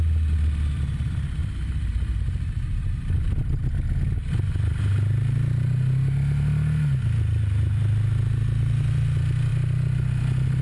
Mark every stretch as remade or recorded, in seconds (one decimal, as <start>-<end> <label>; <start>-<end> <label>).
0.0-1.4 recorded; 1.4-2.2 remade; 2.2-10.6 recorded